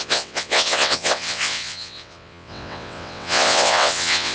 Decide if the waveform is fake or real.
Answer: fake